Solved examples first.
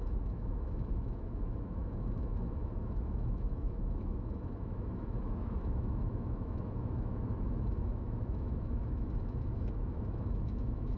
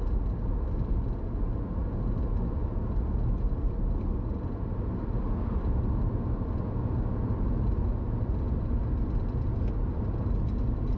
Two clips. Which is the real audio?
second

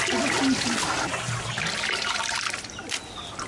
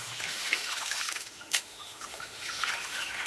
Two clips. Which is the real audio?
first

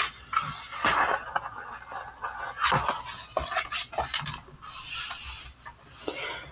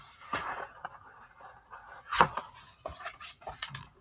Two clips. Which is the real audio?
first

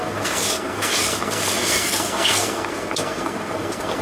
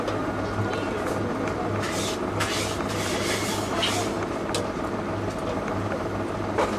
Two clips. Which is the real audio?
second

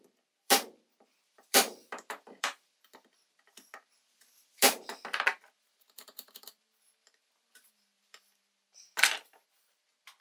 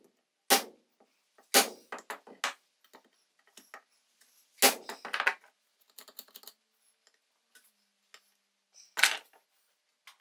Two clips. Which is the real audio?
second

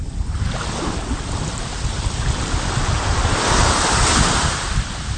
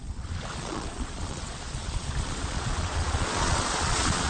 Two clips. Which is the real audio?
first